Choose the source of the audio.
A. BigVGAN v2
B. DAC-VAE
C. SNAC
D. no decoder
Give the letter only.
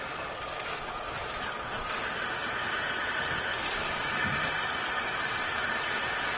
A